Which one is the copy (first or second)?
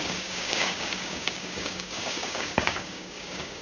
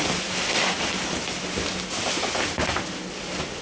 first